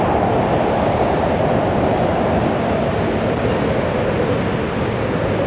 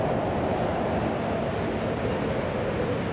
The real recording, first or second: second